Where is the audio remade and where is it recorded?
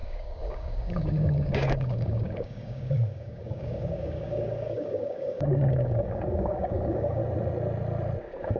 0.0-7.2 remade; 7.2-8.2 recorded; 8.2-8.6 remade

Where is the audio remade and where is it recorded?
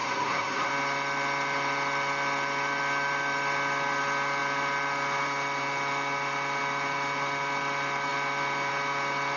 0.0-0.7 remade; 0.7-9.4 recorded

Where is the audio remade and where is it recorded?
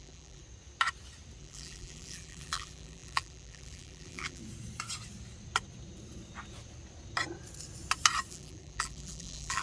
0.0-0.4 remade; 0.4-1.4 recorded; 1.4-4.4 remade; 4.4-8.3 recorded; 8.3-9.6 remade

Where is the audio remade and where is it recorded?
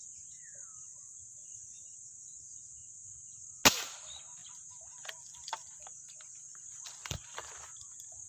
0.0-1.3 recorded; 1.3-1.9 remade; 1.9-4.4 recorded; 4.4-7.5 remade; 7.5-8.3 recorded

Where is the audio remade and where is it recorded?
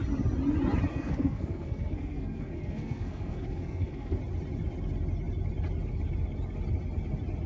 0.0-0.9 recorded; 0.9-4.2 remade; 4.2-7.5 recorded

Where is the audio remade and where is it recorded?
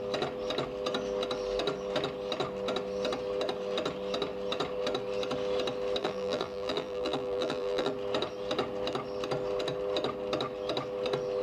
0.0-6.0 recorded; 6.0-7.9 remade; 7.9-11.4 recorded